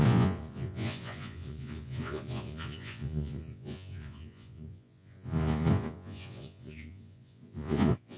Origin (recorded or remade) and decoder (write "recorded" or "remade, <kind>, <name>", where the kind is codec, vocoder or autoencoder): remade, vocoder, Vocos